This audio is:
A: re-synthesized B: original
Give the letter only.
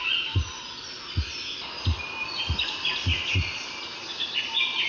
B